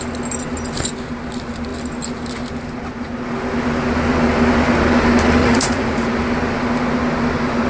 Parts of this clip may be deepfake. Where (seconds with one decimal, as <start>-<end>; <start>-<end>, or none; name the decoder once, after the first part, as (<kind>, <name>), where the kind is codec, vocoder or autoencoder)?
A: 5.4-6.1 (vocoder, Vocos)